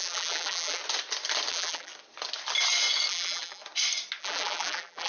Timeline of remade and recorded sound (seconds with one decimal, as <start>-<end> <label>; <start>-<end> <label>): 0.0-0.8 remade; 0.8-1.5 recorded; 1.5-1.9 remade; 1.9-3.1 recorded; 3.1-3.6 remade; 3.6-4.2 recorded; 4.2-5.1 remade